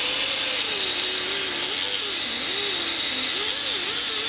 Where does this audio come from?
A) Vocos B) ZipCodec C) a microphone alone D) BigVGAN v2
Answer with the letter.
C